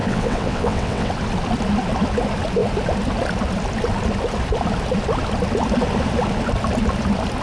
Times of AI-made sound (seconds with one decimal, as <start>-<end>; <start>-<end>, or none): 0.0-1.1